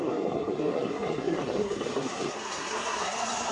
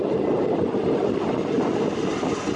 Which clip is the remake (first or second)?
first